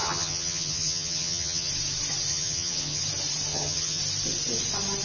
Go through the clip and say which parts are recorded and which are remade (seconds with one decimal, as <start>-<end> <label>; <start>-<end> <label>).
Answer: 0.0-1.7 remade; 1.7-2.3 recorded; 2.3-3.0 remade; 3.0-3.5 recorded; 3.5-4.0 remade; 4.0-5.0 recorded